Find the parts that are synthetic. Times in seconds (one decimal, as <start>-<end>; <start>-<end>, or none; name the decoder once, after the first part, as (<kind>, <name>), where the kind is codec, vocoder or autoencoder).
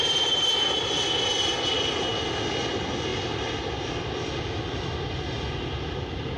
none